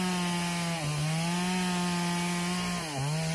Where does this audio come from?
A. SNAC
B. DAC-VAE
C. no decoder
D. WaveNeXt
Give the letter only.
C